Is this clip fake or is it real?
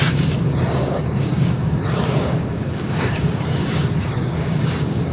fake